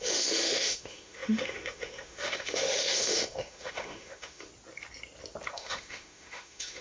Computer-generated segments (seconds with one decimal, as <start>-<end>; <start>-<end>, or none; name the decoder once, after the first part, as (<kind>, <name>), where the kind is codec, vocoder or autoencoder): 0.0-4.5 (autoencoder, DAC-VAE); 5.5-6.8